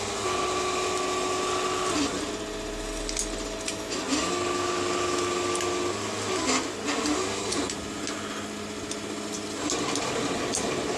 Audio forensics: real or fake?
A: real